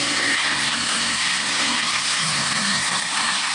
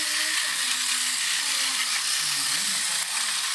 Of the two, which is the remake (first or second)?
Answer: first